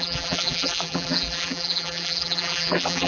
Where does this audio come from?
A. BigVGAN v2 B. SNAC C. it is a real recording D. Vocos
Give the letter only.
A